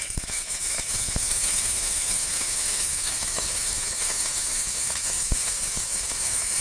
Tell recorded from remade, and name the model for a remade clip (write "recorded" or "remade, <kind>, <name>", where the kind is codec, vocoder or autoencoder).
remade, autoencoder, DAC-VAE